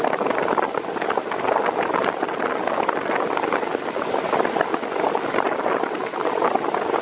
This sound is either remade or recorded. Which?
recorded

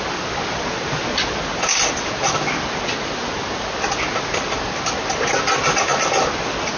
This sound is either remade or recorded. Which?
recorded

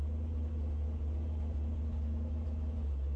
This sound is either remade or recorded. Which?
recorded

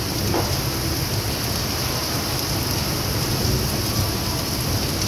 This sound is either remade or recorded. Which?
recorded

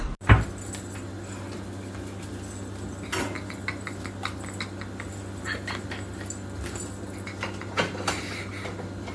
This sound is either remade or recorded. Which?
recorded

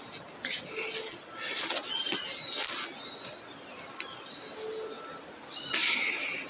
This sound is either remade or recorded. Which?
recorded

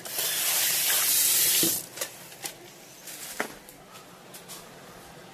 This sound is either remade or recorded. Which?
recorded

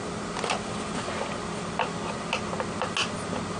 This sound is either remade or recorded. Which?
recorded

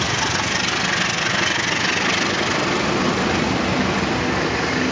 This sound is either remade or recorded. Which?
recorded